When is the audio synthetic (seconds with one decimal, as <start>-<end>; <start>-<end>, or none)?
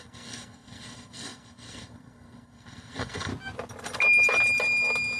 0.0-3.3